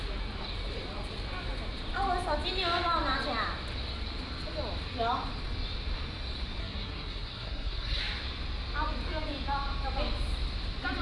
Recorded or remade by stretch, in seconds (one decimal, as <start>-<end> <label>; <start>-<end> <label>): 0.0-6.6 recorded; 6.6-8.0 remade; 8.0-11.0 recorded